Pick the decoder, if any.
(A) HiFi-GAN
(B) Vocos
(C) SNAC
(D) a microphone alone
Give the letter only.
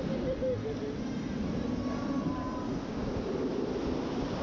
D